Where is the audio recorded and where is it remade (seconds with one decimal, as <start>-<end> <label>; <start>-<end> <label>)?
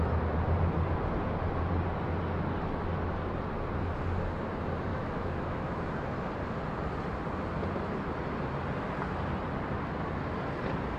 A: 0.0-4.9 recorded; 4.9-5.9 remade; 5.9-11.0 recorded